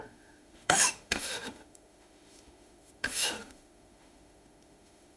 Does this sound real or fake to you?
fake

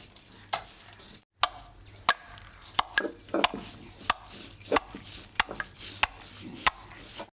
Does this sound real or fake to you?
real